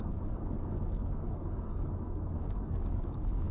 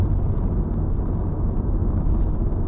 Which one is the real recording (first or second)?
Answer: second